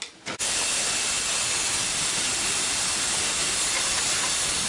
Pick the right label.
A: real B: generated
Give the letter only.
A